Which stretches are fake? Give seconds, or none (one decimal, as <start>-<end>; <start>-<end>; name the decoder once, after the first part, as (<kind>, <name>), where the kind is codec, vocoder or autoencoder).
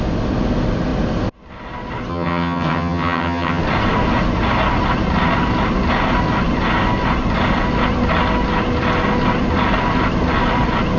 2.1-3.6 (vocoder, HiFi-GAN)